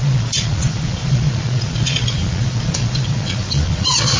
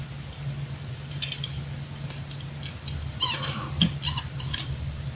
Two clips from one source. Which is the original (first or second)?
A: second